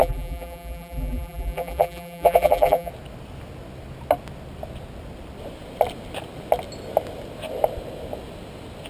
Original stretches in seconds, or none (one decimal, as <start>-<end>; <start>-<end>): 2.9-8.9